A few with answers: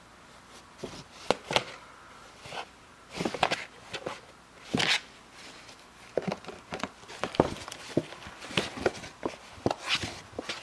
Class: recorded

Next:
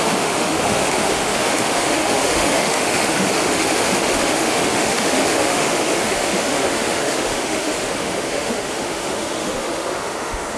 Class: remade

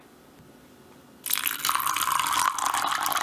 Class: recorded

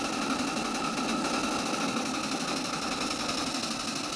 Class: recorded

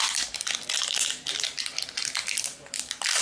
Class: recorded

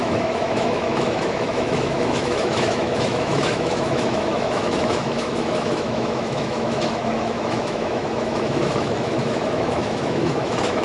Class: remade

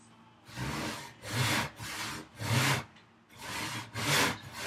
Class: recorded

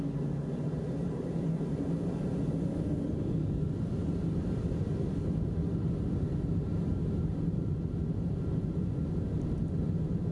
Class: recorded